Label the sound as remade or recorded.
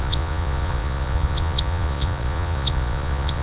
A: remade